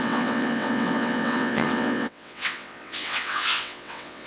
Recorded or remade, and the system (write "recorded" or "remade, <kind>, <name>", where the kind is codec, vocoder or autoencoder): remade, vocoder, WaveNeXt